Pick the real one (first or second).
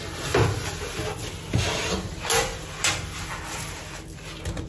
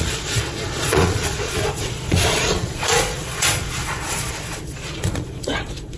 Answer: first